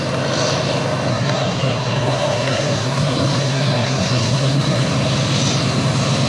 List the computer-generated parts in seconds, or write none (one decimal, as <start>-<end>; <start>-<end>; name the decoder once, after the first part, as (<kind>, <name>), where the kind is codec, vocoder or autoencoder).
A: 1.1-4.9 (codec, SNAC)

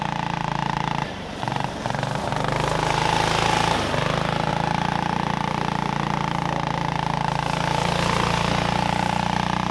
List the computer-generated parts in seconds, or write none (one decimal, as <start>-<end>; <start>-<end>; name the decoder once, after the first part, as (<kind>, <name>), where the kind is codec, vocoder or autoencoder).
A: 0.6-2.3 (vocoder, BigVGAN v2)

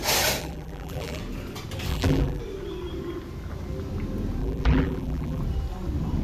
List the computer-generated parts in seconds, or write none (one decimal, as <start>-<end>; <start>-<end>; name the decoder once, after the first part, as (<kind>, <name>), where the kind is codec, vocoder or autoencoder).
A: 0.4-1.2 (vocoder, BigVGAN v2); 1.9-2.4; 4.4-5.4

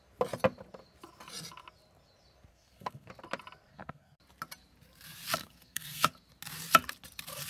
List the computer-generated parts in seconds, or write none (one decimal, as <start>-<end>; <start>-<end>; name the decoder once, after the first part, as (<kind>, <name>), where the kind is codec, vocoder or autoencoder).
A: 2.5-3.1 (codec, SNAC); 3.7-4.2; 5.4-6.1

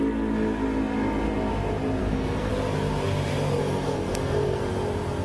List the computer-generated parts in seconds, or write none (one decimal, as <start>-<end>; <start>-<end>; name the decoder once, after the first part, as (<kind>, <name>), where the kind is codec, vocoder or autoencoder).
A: 2.0-2.5 (codec, SNAC); 3.6-4.6

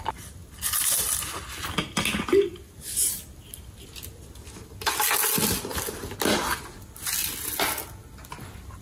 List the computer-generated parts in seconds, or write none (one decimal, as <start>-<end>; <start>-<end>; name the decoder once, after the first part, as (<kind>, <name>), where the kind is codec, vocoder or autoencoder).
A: none

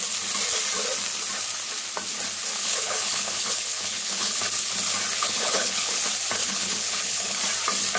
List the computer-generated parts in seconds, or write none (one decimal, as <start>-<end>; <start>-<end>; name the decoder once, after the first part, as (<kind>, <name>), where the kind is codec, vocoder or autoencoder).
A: 2.5-4.4 (codec, HILCodec); 5.2-6.0; 6.4-7.4